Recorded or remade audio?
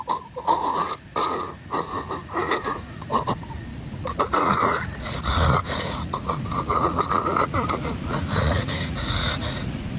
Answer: remade